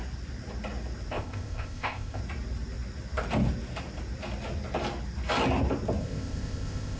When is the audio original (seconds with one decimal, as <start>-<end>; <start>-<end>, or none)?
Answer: 0.0-1.1; 2.2-6.0